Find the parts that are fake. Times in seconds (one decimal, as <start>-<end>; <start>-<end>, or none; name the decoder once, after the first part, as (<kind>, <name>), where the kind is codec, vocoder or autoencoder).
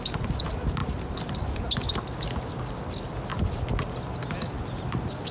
none